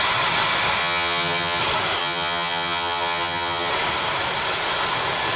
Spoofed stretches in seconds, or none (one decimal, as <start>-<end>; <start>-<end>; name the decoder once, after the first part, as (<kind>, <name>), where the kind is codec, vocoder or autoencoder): 0.8-1.6 (vocoder, HiFi-GAN); 2.0-3.7